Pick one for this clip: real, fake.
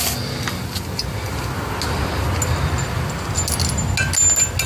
real